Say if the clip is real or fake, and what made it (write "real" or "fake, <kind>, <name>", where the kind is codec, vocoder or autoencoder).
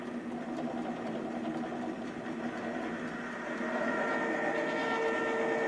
real